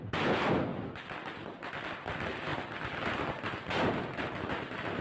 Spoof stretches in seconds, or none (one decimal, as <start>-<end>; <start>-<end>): 0.7-1.5